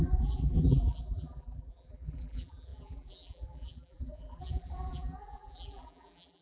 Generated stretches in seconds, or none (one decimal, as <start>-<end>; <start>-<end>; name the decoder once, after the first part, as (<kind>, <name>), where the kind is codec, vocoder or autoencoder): 0.0-6.4 (vocoder, BigVGAN v2)